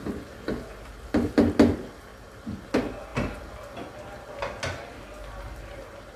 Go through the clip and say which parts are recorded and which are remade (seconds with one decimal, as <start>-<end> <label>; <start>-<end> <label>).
0.0-6.2 recorded